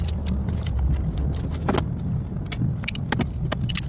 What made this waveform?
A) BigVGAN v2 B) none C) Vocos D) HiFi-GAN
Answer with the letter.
B